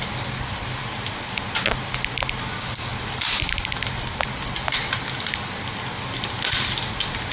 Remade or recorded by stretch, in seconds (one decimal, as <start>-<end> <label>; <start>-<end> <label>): 0.0-7.3 recorded